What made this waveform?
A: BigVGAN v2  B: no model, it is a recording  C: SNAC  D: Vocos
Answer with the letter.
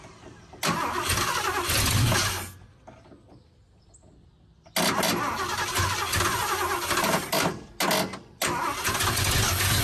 B